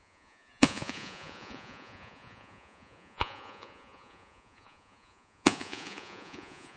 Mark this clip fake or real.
fake